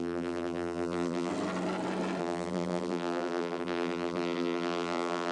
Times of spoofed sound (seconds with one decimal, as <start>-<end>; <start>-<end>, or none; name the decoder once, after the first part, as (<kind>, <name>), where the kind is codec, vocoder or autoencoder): 0.0-1.3 (vocoder, BigVGAN v2); 2.2-5.3